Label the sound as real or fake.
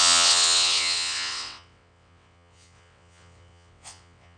fake